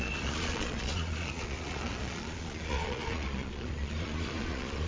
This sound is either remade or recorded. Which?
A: remade